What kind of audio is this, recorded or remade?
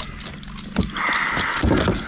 recorded